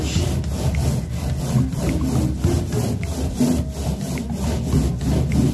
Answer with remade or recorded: recorded